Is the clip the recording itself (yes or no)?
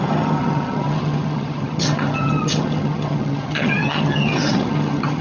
no